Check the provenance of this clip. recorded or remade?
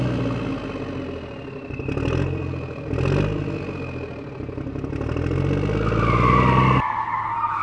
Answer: recorded